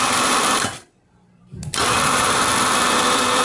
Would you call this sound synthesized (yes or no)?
yes